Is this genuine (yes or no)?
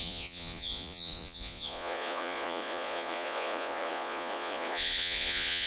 no